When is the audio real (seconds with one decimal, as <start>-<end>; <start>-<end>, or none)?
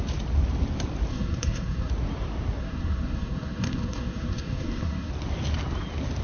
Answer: 0.0-1.1; 1.9-2.6; 5.1-6.2